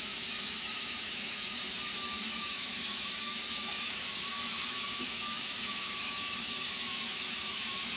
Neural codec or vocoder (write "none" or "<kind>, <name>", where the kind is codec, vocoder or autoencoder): autoencoder, DAC-VAE